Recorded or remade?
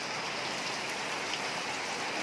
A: recorded